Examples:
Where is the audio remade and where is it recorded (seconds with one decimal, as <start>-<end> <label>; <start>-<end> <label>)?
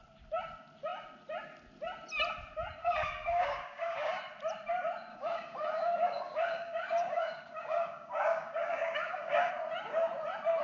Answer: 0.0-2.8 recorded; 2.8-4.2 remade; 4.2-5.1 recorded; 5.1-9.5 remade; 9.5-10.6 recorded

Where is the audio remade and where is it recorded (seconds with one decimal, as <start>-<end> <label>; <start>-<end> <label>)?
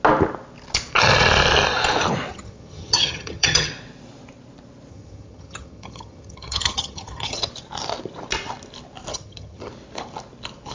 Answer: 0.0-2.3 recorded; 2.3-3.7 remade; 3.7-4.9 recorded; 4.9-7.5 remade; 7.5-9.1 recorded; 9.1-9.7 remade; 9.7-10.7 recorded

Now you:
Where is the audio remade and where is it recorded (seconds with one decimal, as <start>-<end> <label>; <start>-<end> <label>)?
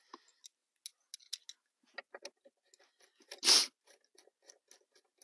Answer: 0.0-5.2 recorded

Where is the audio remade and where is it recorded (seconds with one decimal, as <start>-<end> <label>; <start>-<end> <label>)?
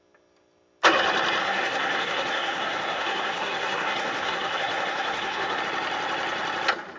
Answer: 0.0-1.4 recorded; 1.4-5.6 remade; 5.6-7.0 recorded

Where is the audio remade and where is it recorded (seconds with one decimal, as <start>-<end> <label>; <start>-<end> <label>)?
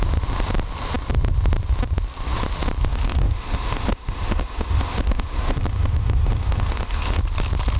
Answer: 0.0-2.9 recorded; 2.9-7.2 remade; 7.2-7.8 recorded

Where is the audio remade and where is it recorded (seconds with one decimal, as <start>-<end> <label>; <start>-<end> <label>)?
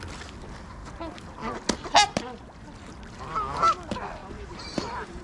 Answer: 0.0-4.2 recorded; 4.2-5.2 remade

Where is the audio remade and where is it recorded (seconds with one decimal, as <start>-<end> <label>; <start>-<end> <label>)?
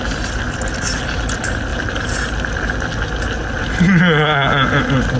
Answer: 0.0-5.2 recorded